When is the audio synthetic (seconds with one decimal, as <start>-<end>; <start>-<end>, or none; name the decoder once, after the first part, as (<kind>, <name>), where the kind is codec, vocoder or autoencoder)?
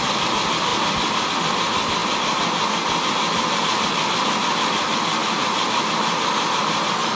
none